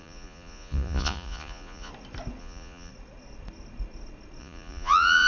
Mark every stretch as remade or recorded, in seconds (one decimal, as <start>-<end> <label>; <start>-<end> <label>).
0.0-1.9 remade; 1.9-2.4 recorded; 2.4-2.9 remade; 2.9-4.4 recorded; 4.4-5.3 remade